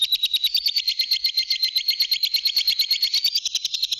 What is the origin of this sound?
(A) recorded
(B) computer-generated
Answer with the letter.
A